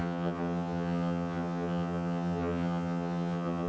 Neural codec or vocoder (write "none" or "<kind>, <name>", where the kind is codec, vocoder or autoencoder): vocoder, HiFi-GAN